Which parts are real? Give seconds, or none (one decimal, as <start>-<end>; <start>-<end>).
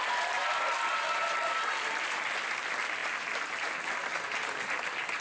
0.0-0.4; 1.7-5.2